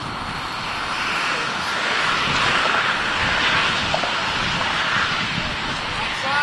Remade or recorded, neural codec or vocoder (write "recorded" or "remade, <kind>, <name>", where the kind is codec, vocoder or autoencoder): recorded